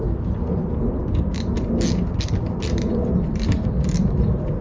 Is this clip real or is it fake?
real